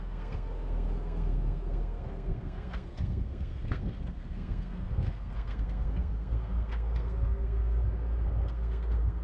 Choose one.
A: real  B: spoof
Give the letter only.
B